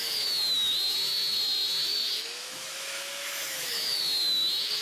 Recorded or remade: remade